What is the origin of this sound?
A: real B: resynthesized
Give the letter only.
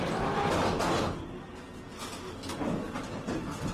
A